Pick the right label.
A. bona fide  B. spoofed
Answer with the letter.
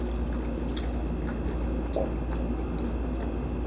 A